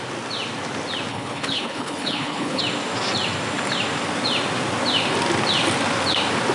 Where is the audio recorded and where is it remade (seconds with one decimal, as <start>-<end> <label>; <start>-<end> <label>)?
0.0-1.1 recorded; 1.1-2.6 remade; 2.6-6.5 recorded